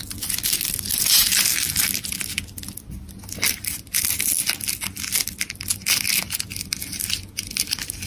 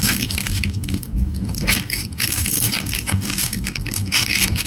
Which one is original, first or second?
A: first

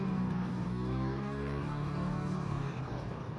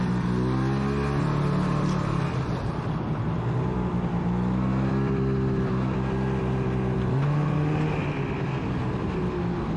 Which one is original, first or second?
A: second